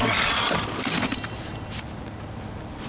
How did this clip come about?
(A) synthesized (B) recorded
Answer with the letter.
B